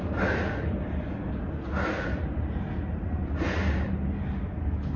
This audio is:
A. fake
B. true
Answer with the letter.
B